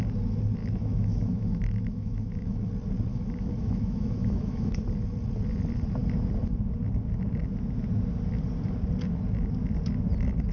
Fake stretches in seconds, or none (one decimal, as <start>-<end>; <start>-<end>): 0.6-2.7; 3.1-4.8